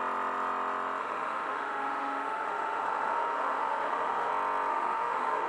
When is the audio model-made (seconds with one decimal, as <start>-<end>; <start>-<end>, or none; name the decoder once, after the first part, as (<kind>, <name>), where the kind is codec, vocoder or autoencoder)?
1.0-4.3 (autoencoder, DAC-VAE); 4.7-5.5